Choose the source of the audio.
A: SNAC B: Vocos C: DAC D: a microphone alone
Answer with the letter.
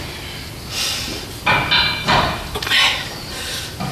D